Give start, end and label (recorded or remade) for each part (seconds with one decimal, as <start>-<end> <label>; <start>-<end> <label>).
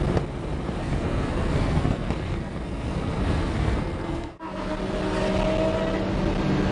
0.0-0.8 recorded; 0.8-4.8 remade; 4.8-6.7 recorded